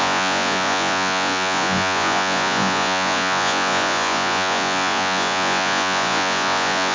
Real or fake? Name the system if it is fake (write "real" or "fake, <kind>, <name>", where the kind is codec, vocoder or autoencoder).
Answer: fake, vocoder, Vocos